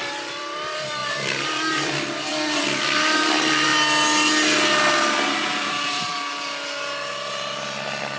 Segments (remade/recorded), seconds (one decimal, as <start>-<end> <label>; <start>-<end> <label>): 0.0-3.7 remade; 3.7-5.3 recorded; 5.3-6.1 remade; 6.1-7.1 recorded; 7.1-8.2 remade